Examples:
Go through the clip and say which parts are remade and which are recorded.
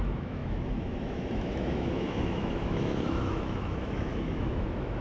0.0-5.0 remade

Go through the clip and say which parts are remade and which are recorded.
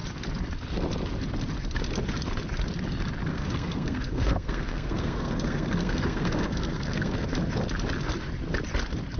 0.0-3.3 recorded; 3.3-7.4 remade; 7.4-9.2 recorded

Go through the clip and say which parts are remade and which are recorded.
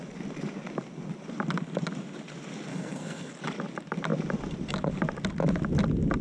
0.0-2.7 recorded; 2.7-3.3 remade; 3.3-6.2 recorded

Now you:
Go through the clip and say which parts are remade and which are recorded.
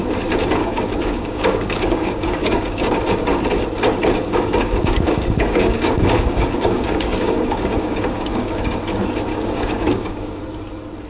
0.0-0.6 recorded; 0.6-2.9 remade; 2.9-4.2 recorded; 4.2-8.8 remade; 8.8-9.3 recorded; 9.3-10.4 remade; 10.4-11.1 recorded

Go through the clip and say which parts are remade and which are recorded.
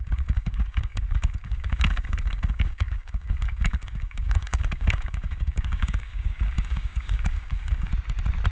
0.0-7.9 remade; 7.9-8.5 recorded